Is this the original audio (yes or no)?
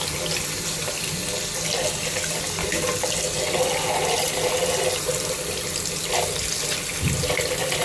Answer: yes